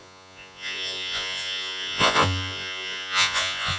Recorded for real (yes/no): no